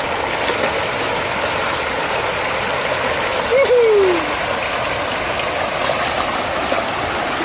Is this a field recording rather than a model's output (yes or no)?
yes